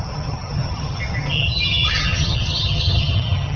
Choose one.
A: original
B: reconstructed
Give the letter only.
B